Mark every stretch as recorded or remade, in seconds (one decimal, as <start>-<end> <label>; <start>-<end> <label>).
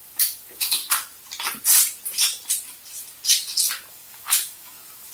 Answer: 0.0-0.8 remade; 0.8-3.9 recorded; 3.9-5.1 remade